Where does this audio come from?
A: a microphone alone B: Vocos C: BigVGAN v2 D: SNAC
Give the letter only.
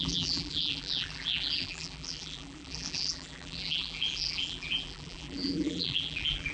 C